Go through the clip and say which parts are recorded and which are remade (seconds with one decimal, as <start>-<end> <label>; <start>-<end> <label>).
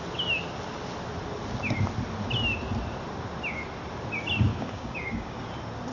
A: 0.0-4.5 recorded; 4.5-5.4 remade; 5.4-5.9 recorded